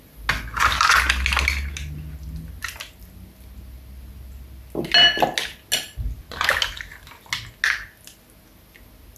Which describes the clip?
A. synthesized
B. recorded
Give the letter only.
B